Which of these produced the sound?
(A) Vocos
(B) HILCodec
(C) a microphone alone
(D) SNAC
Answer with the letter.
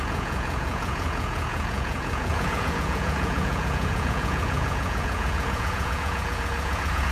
A